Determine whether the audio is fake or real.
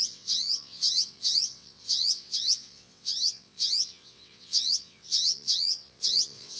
fake